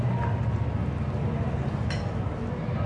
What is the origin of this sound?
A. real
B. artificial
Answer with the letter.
A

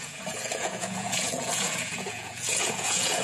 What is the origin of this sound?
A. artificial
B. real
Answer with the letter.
A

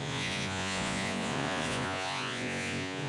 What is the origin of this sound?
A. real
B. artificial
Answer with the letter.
B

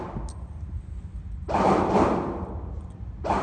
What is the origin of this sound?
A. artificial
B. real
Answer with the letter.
B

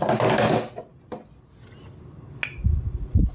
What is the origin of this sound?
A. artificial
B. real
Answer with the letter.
B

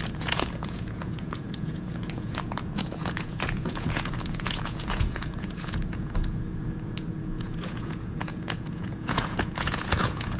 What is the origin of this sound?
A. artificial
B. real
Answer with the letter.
A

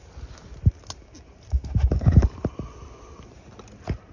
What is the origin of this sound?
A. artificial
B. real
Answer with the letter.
B